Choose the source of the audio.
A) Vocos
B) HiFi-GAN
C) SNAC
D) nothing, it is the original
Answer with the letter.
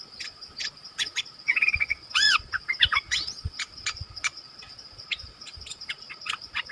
A